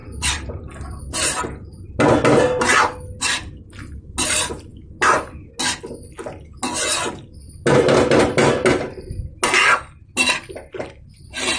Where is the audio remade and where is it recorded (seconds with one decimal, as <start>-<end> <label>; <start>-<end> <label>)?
0.0-11.6 recorded